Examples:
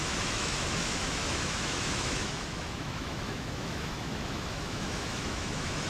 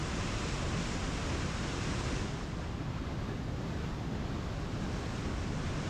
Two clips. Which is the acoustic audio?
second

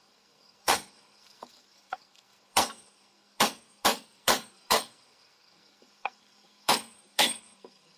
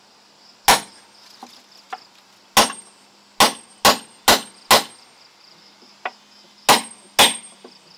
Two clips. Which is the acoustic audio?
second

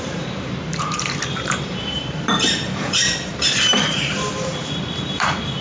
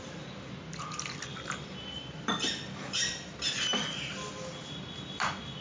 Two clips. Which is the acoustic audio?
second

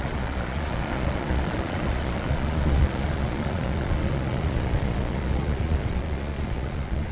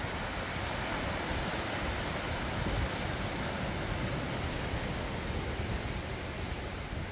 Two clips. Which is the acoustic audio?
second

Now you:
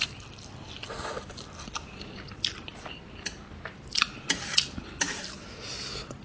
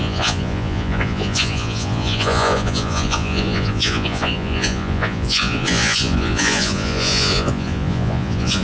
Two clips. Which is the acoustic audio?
first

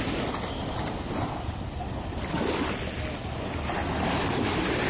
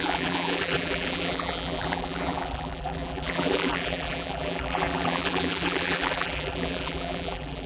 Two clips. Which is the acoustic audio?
first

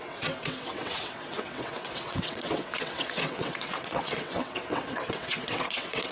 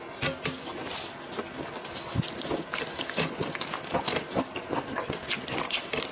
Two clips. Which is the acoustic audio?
second